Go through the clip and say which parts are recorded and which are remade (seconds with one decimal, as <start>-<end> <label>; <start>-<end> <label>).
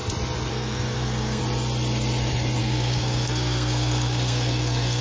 0.0-0.5 recorded; 0.5-1.4 remade; 1.4-2.6 recorded; 2.6-5.0 remade